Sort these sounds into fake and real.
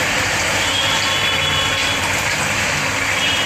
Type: real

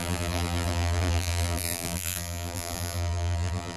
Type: fake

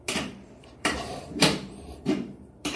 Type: fake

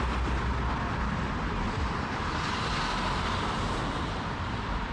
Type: fake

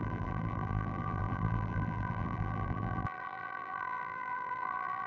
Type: fake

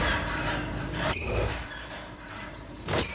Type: fake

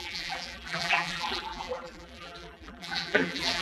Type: fake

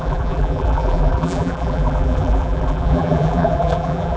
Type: fake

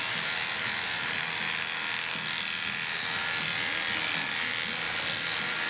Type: real